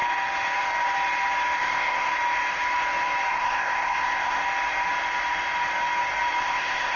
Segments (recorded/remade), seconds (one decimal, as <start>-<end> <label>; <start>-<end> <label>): 0.0-1.6 recorded; 1.6-2.1 remade; 2.1-3.3 recorded; 3.3-4.4 remade; 4.4-6.4 recorded; 6.4-7.0 remade